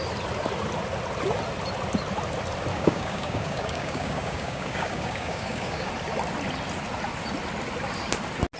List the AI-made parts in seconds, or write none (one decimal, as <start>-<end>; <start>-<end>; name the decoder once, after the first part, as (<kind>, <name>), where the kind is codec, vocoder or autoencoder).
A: 2.7-5.9 (codec, DAC)